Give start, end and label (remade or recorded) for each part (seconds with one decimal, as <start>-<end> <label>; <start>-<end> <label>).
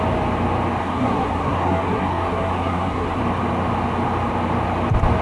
0.0-0.8 recorded; 0.8-3.2 remade; 3.2-5.2 recorded